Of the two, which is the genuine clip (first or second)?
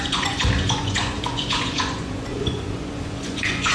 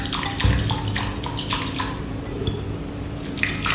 second